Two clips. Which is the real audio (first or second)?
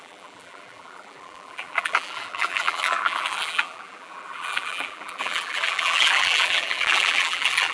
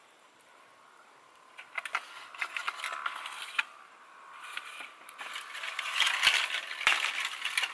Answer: second